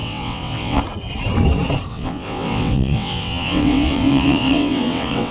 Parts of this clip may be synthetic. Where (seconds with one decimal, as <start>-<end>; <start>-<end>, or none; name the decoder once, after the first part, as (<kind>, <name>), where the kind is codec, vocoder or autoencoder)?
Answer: 0.0-0.8 (vocoder, WaveNeXt); 1.9-5.3